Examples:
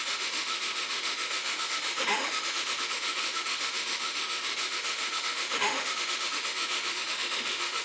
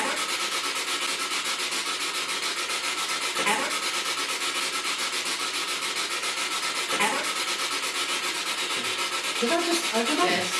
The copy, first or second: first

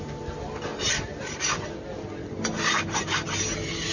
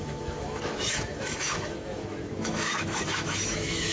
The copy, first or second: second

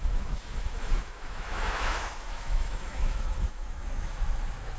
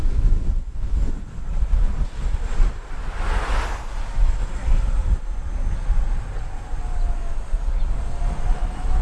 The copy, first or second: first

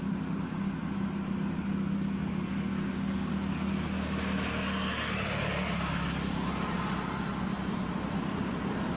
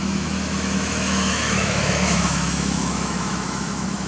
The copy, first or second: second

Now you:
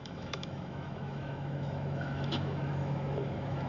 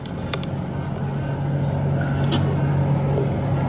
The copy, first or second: first